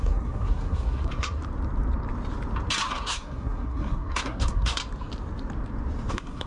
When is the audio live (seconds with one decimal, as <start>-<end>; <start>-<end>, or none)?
1.4-2.9; 4.8-6.1